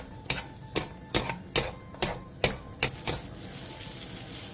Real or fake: real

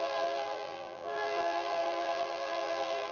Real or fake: fake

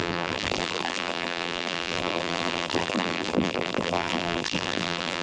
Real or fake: fake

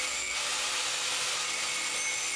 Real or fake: real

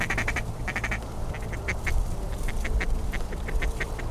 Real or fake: fake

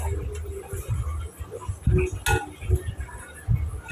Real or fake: real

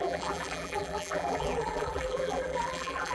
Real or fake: fake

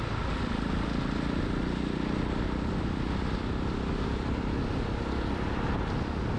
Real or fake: real